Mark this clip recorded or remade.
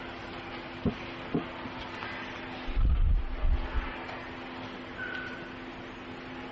recorded